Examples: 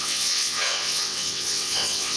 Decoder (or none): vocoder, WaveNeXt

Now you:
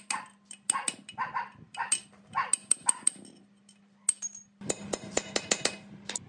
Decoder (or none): none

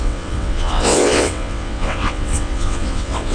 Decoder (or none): vocoder, WaveNeXt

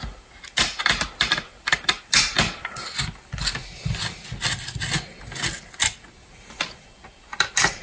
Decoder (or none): none